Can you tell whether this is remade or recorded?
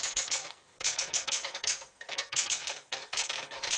remade